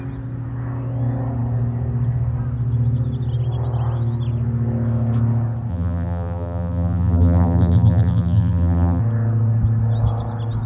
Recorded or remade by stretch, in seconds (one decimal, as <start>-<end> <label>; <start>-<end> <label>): 0.0-5.7 recorded; 5.7-9.0 remade; 9.0-10.7 recorded